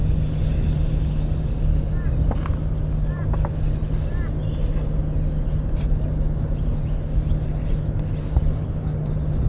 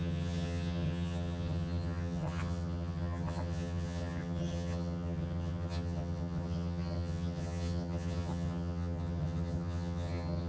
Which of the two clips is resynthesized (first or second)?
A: second